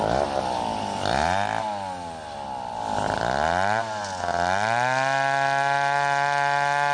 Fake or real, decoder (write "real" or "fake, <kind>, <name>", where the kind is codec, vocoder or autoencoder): real